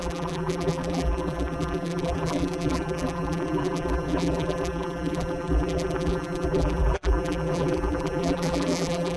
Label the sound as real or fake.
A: fake